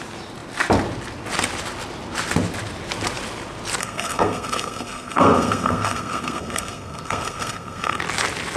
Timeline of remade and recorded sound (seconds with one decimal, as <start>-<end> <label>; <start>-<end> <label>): 0.0-3.8 recorded; 3.8-8.0 remade; 8.0-8.6 recorded